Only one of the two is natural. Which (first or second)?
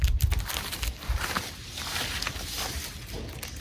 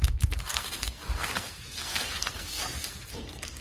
first